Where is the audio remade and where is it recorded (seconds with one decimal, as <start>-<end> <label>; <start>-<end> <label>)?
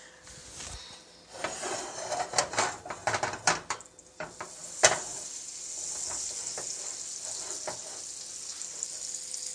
0.0-9.5 recorded